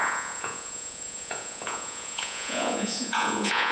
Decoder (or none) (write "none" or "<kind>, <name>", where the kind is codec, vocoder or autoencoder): vocoder, Vocos